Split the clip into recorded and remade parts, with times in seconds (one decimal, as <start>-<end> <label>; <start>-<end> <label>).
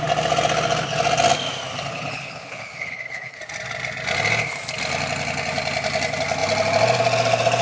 0.0-1.9 recorded; 1.9-3.4 remade; 3.4-7.6 recorded